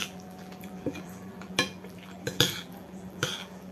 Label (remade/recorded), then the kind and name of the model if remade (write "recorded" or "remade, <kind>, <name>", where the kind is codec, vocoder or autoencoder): remade, vocoder, BigVGAN v2